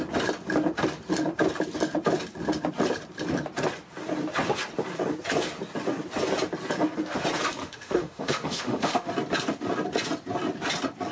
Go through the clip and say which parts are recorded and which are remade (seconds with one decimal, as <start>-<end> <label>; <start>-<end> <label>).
0.0-7.6 recorded; 7.6-9.1 remade; 9.1-11.1 recorded